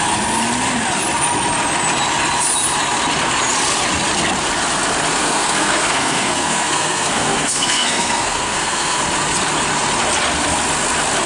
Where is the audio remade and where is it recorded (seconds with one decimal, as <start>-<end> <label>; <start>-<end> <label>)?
0.0-5.2 recorded; 5.2-9.0 remade; 9.0-11.3 recorded